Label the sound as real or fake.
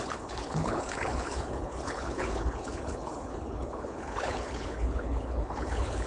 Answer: fake